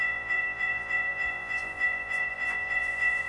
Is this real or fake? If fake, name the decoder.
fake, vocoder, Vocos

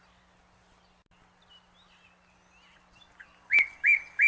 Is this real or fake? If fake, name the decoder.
real